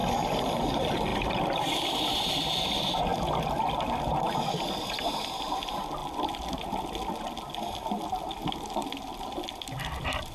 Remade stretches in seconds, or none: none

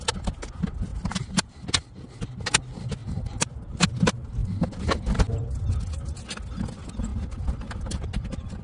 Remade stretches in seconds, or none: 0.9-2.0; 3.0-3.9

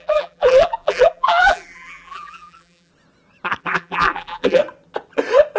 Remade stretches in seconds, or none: 0.0-2.9; 3.6-4.6